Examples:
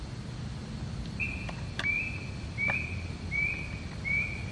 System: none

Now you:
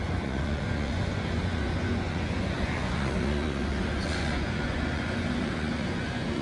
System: vocoder, Vocos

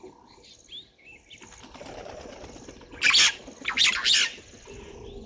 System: none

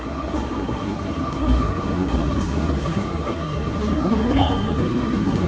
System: codec, SNAC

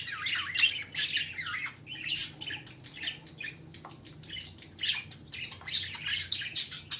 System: none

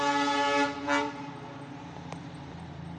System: none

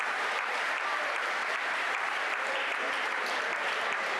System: vocoder, BigVGAN v2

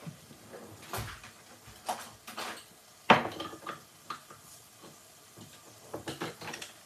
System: none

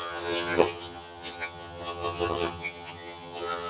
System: vocoder, HiFi-GAN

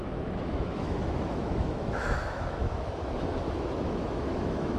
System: autoencoder, DAC-VAE